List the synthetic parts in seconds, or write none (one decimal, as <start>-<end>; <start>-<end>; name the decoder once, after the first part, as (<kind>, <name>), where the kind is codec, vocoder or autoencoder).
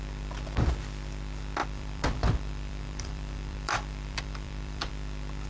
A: 1.6-4.9 (vocoder, BigVGAN v2)